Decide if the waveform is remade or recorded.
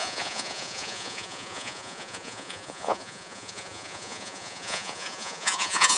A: remade